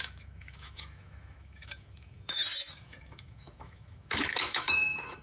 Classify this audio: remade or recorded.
remade